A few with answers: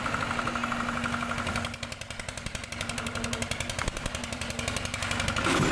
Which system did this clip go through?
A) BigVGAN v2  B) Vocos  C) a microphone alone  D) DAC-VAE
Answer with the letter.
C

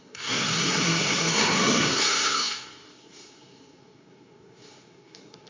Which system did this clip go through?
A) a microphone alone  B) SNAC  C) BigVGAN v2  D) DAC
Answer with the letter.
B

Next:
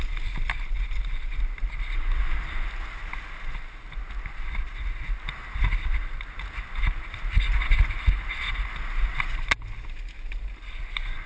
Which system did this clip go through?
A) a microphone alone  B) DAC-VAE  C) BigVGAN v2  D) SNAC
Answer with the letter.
A